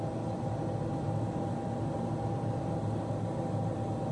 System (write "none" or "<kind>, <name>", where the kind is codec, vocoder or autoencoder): none